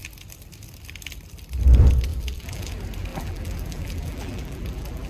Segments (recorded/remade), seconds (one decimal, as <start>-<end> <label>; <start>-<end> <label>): 0.0-2.1 recorded; 2.1-2.7 remade; 2.7-3.1 recorded; 3.1-5.1 remade